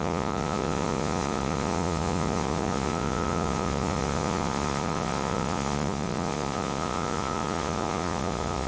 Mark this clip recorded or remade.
remade